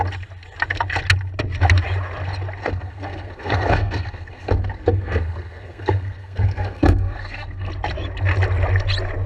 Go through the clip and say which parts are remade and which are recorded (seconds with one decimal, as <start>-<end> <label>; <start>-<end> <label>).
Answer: 0.0-2.6 recorded; 2.6-7.7 remade; 7.7-9.3 recorded